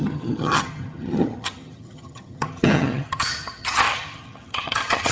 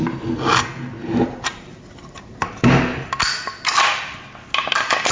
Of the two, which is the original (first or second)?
second